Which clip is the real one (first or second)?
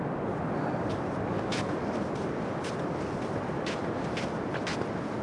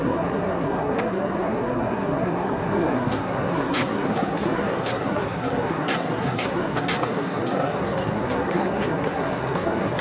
first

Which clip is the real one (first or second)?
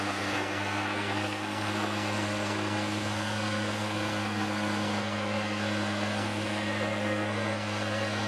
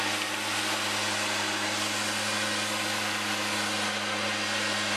second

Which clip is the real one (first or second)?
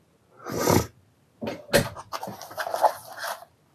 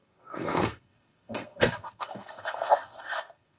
first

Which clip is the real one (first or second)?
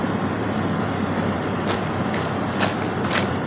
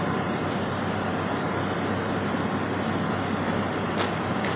second